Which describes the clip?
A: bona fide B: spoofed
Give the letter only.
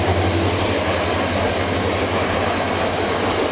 A